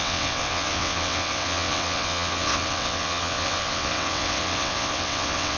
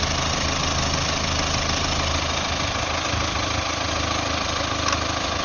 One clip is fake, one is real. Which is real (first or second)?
second